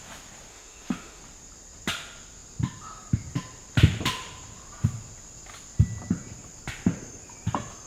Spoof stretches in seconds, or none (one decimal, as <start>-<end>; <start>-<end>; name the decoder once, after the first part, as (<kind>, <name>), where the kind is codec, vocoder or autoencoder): 0.5-1.2 (autoencoder, DAC-VAE)